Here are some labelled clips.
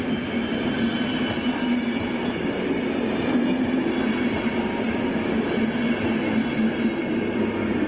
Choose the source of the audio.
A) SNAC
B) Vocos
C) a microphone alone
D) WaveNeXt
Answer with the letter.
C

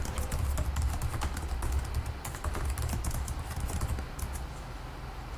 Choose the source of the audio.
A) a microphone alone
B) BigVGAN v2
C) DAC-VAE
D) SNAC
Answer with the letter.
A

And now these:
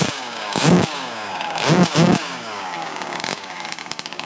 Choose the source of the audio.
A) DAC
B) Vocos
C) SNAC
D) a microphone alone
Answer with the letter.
A